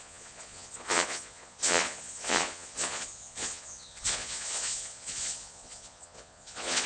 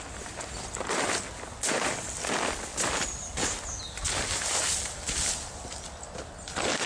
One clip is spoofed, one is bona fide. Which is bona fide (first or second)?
second